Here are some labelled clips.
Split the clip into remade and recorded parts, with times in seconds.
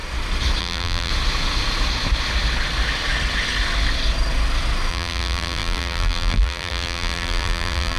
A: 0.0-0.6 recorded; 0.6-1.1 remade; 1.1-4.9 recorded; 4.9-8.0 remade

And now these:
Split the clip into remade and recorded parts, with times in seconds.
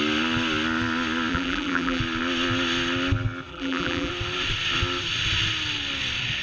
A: 0.0-1.3 recorded; 1.3-2.0 remade; 2.0-3.5 recorded; 3.5-4.1 remade; 4.1-6.4 recorded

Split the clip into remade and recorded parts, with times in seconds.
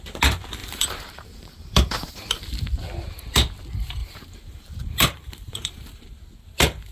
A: 0.0-0.6 recorded; 0.6-2.4 remade; 2.4-4.0 recorded; 4.0-6.1 remade; 6.1-6.9 recorded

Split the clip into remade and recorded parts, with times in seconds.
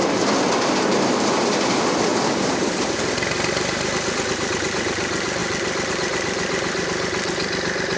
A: 0.0-8.0 remade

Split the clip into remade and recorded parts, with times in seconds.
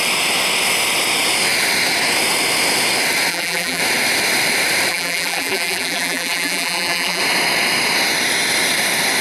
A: 0.0-3.3 recorded; 3.3-3.8 remade; 3.8-4.9 recorded; 4.9-7.2 remade; 7.2-9.2 recorded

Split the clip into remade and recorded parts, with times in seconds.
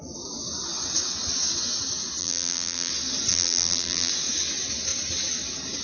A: 0.0-2.2 recorded; 2.2-2.9 remade; 2.9-3.3 recorded; 3.3-4.1 remade; 4.1-5.8 recorded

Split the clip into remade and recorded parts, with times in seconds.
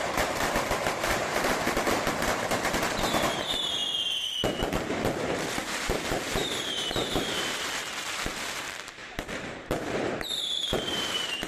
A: 0.0-3.8 remade; 3.8-4.7 recorded; 4.7-11.5 remade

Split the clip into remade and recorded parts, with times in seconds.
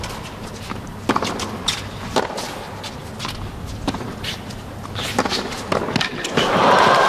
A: 0.0-7.1 recorded